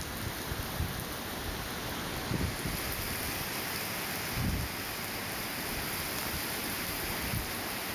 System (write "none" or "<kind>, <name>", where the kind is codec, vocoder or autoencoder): none